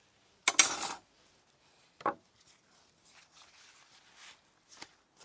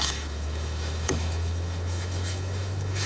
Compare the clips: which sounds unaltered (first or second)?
first